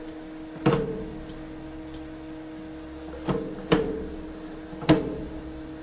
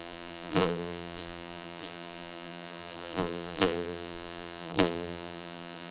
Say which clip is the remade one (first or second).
second